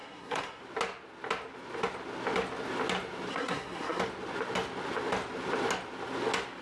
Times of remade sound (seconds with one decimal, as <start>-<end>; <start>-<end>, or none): 0.0-0.6; 3.3-4.0